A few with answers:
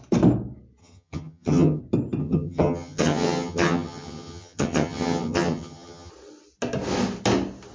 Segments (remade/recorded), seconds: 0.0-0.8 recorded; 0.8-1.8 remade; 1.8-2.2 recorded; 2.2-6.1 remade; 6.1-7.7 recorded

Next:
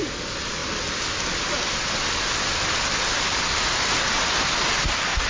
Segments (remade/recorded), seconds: 0.0-5.3 recorded

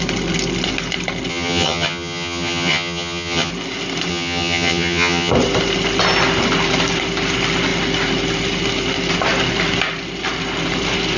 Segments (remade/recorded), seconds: 0.0-1.3 recorded; 1.3-3.5 remade; 3.5-4.1 recorded; 4.1-5.3 remade; 5.3-11.2 recorded

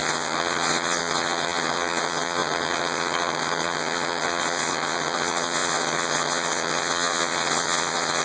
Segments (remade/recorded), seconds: 0.0-8.2 remade